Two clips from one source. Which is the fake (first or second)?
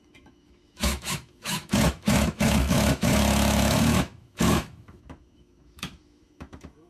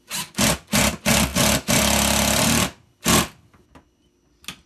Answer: first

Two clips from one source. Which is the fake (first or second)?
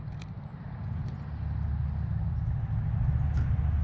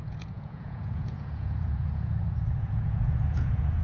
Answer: second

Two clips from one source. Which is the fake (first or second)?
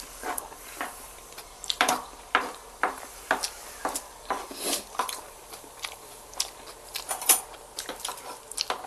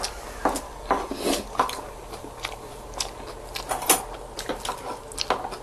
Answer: first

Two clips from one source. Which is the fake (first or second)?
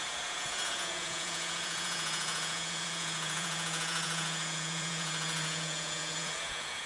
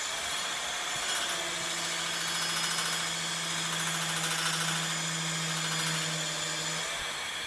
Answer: first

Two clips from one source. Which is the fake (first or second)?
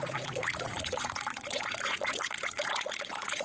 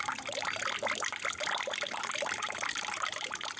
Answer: first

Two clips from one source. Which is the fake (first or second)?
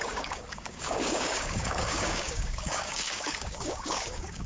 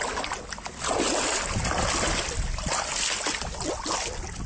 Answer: first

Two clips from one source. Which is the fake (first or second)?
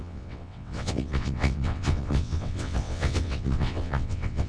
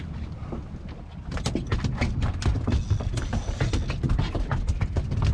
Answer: first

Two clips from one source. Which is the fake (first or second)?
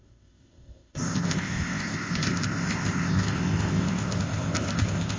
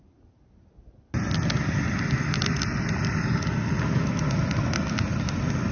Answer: first